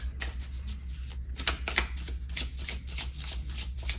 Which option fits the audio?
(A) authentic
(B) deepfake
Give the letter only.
A